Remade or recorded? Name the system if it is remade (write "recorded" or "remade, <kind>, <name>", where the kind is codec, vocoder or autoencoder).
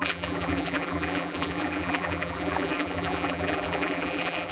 remade, vocoder, BigVGAN v2